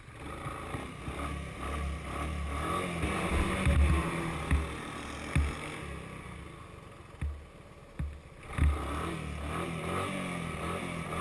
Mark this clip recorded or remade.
recorded